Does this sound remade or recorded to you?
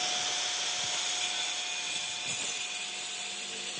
recorded